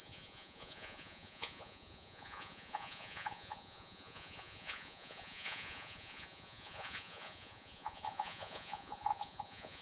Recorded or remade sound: remade